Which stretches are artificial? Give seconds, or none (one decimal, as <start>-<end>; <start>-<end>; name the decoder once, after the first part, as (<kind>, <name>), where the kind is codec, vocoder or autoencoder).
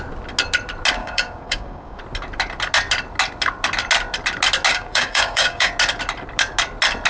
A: 1.0-2.0 (codec, DAC); 4.7-5.7